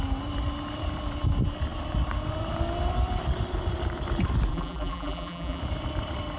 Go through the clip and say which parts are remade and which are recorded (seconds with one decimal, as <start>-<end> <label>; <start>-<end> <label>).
0.0-4.5 recorded; 4.5-5.6 remade; 5.6-6.4 recorded